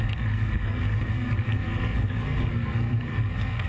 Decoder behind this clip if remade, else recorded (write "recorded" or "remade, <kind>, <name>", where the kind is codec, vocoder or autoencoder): remade, codec, SNAC